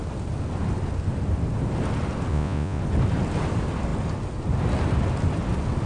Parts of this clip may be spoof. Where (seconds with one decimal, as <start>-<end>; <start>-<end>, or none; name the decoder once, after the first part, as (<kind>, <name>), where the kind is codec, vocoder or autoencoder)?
2.3-2.8 (vocoder, Vocos)